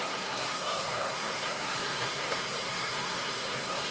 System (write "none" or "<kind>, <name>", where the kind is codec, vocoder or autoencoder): codec, SNAC